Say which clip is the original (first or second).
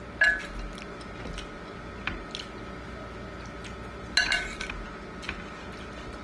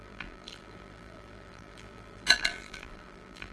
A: first